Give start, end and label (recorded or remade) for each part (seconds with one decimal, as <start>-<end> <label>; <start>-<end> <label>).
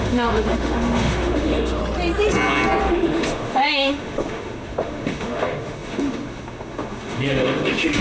0.0-1.8 remade; 1.8-2.8 recorded; 2.8-8.0 remade